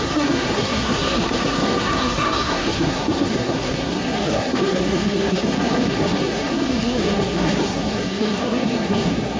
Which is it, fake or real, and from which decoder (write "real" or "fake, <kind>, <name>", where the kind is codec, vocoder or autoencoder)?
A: fake, codec, SNAC